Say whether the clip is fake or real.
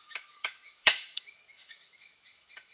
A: fake